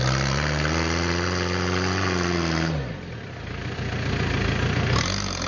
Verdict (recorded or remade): recorded